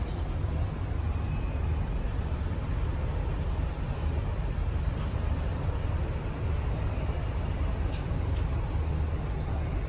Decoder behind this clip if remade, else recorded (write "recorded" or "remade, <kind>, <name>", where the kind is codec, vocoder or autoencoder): recorded